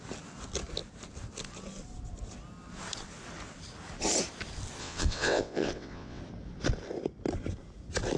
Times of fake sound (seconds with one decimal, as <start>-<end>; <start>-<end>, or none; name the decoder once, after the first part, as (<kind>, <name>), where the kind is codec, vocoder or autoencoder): 4.8-6.2 (vocoder, WaveNeXt)